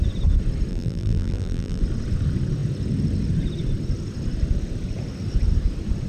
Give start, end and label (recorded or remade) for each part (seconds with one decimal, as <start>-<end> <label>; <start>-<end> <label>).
0.0-0.7 recorded; 0.7-1.8 remade; 1.8-6.1 recorded